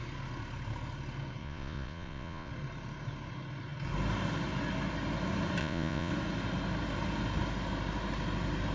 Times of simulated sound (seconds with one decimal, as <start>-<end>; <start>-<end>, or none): 1.4-2.5; 5.6-6.1